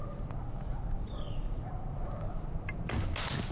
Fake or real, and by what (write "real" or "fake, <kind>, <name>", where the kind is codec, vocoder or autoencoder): fake, vocoder, BigVGAN v2